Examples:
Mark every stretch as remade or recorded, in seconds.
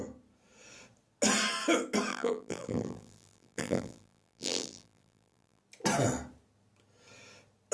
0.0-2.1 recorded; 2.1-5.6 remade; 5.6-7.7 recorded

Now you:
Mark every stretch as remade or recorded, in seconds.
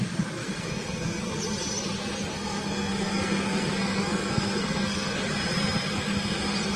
0.0-0.4 recorded; 0.4-1.2 remade; 1.2-2.3 recorded; 2.3-5.2 remade; 5.2-6.8 recorded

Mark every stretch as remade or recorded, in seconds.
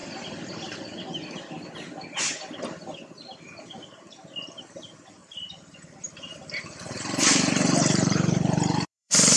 0.0-5.2 recorded; 5.2-9.4 remade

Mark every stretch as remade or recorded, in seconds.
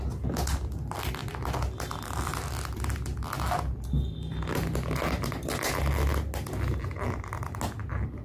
0.0-8.2 recorded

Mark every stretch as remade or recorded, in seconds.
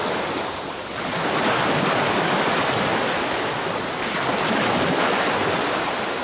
0.0-6.2 recorded